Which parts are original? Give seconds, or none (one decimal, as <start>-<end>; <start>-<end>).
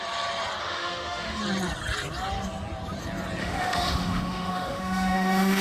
0.0-0.6; 1.4-3.4